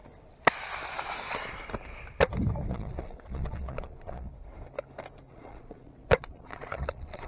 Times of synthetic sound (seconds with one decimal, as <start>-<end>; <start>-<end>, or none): 2.7-4.3; 5.3-7.3